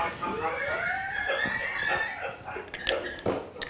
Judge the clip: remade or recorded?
recorded